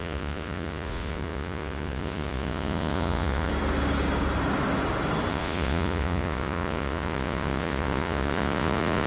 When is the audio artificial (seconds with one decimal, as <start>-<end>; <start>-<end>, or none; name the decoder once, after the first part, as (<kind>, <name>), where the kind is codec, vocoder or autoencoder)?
0.0-3.5 (vocoder, Vocos); 5.3-9.1